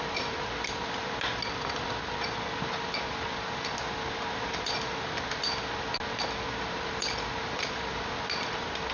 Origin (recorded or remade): recorded